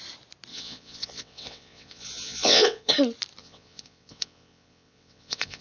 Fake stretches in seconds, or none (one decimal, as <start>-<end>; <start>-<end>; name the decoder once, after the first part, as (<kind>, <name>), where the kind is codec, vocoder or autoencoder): 0.5-2.9 (vocoder, WaveNeXt); 3.4-5.6